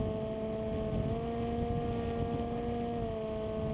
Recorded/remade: recorded